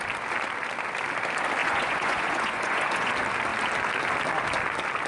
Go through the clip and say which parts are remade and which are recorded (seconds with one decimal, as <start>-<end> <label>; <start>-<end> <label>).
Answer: 0.0-1.6 recorded; 1.6-3.1 remade; 3.1-5.1 recorded